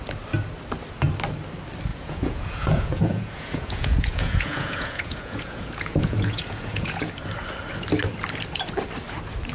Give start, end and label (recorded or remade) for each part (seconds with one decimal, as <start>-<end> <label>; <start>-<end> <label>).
0.0-1.9 recorded; 1.9-7.1 remade; 7.1-9.5 recorded